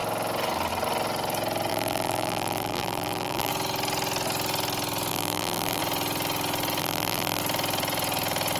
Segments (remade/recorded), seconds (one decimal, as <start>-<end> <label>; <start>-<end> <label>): 0.0-1.7 recorded; 1.7-3.5 remade; 3.5-5.1 recorded; 5.1-5.8 remade; 5.8-6.8 recorded; 6.8-7.4 remade; 7.4-8.6 recorded

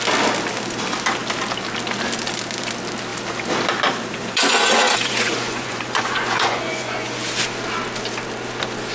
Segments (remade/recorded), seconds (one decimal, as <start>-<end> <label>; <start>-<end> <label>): 0.0-4.2 recorded; 4.2-7.2 remade; 7.2-8.9 recorded

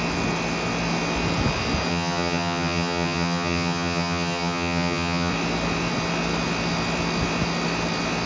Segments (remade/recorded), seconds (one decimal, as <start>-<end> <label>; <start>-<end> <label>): 0.0-1.9 recorded; 1.9-5.3 remade; 5.3-8.3 recorded

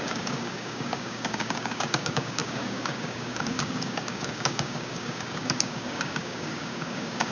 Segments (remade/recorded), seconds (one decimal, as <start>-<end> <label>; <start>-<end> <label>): 0.0-7.3 remade

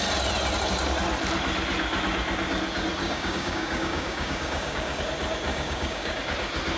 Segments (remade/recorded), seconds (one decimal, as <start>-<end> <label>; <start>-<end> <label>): 0.0-3.0 recorded; 3.0-5.0 remade; 5.0-5.5 recorded; 5.5-6.2 remade; 6.2-6.8 recorded

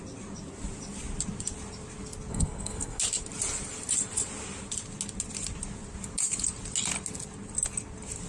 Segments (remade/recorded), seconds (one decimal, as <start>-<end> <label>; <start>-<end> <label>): 0.0-2.3 recorded; 2.3-3.0 remade; 3.0-8.3 recorded

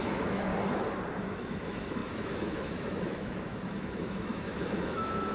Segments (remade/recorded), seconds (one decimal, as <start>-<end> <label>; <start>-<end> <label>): 0.0-0.5 remade; 0.5-1.2 recorded; 1.2-5.3 remade